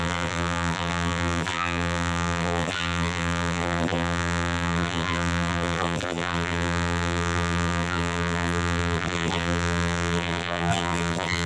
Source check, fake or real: fake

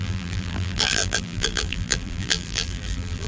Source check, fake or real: fake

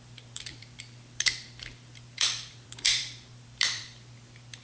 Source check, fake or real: fake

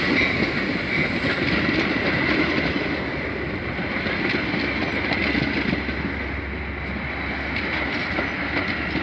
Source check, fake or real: real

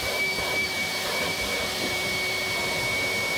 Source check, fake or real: fake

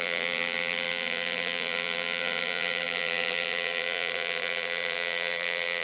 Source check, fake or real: fake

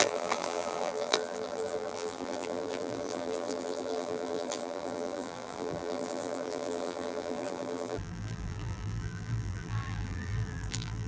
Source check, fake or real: fake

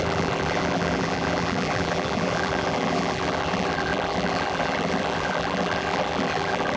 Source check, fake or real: fake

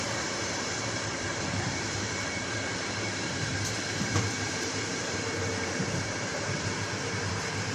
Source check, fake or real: fake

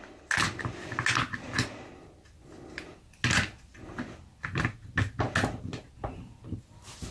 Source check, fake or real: real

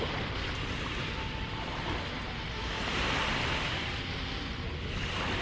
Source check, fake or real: real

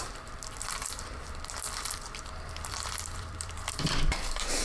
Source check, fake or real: fake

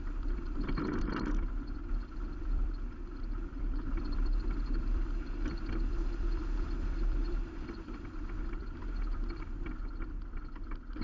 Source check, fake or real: fake